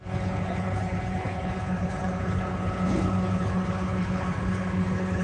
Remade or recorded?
remade